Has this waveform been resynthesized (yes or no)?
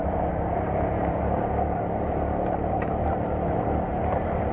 no